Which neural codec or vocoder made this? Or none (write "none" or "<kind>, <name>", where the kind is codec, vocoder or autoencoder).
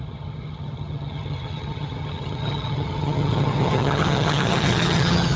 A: vocoder, HiFi-GAN